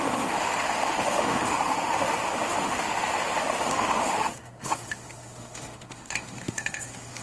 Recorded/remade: remade